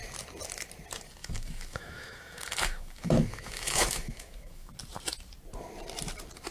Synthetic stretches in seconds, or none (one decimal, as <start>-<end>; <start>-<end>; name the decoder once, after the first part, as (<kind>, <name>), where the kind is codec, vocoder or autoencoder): 1.2-4.7 (autoencoder, DAC-VAE)